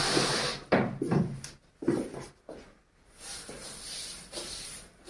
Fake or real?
real